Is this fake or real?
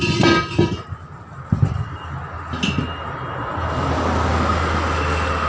real